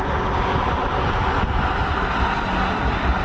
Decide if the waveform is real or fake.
real